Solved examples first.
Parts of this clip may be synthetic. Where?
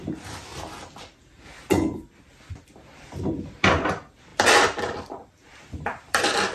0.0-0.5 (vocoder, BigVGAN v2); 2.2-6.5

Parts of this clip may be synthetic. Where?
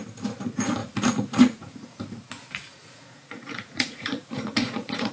0.8-2.0 (vocoder, Vocos); 2.7-5.1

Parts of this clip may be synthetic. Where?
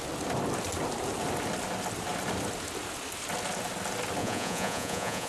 4.2-5.3 (vocoder, Vocos)